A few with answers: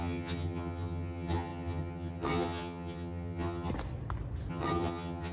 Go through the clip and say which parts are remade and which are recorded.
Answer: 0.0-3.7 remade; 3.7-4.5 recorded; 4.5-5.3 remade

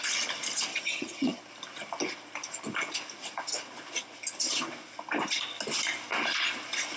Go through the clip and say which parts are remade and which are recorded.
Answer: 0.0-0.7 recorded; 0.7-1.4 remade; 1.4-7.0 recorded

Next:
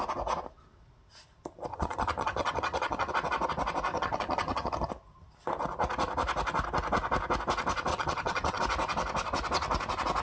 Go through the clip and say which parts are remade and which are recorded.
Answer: 0.0-1.7 recorded; 1.7-3.1 remade; 3.1-3.9 recorded; 3.9-4.9 remade; 4.9-7.9 recorded; 7.9-8.6 remade; 8.6-10.2 recorded

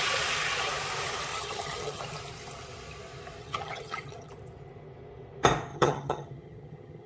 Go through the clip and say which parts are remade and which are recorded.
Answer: 0.0-1.3 recorded; 1.3-2.0 remade; 2.0-3.4 recorded; 3.4-4.3 remade; 4.3-5.7 recorded; 5.7-7.1 remade

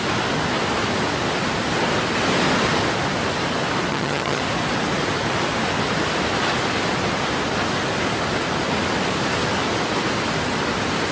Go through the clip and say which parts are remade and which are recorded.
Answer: 0.0-3.9 recorded; 3.9-4.4 remade; 4.4-11.1 recorded

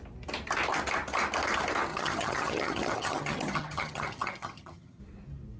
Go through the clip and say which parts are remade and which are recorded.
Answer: 0.0-1.9 recorded; 1.9-5.0 remade; 5.0-5.6 recorded

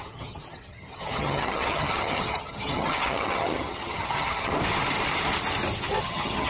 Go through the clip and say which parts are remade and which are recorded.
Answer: 0.0-4.5 remade; 4.5-6.0 recorded; 6.0-6.5 remade